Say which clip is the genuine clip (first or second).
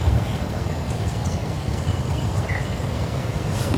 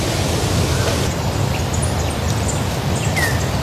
second